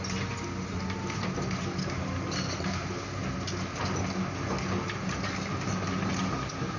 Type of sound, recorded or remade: recorded